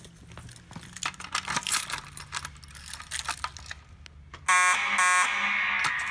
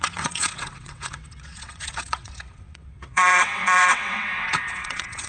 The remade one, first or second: second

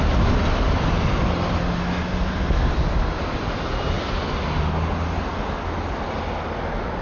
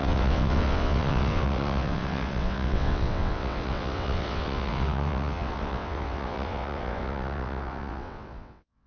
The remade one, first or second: second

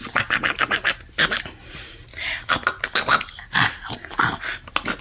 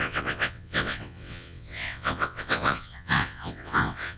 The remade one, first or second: second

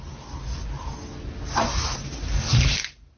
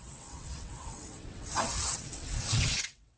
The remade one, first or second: second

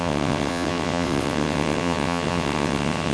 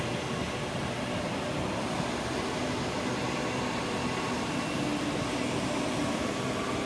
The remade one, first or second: first